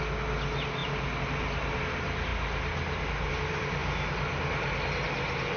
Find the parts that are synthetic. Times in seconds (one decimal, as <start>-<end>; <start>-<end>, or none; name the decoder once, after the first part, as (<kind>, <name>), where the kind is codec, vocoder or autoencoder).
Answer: 0.8-1.8 (vocoder, BigVGAN v2)